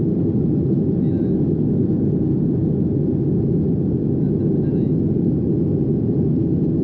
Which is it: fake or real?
real